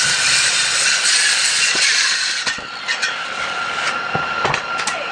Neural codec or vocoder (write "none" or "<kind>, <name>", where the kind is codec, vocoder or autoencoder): none